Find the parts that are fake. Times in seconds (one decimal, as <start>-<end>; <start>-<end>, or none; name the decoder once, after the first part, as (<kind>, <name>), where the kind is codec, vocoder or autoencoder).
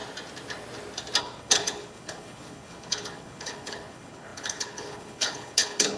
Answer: 1.2-6.0 (codec, HILCodec)